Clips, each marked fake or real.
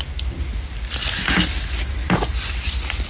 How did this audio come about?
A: real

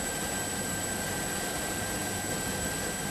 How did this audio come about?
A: fake